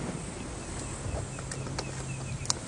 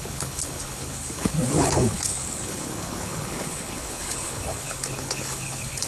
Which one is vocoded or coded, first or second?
second